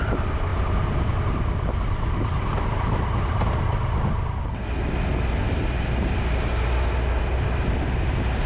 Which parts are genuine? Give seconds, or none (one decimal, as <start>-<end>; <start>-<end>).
0.0-0.5; 1.1-8.5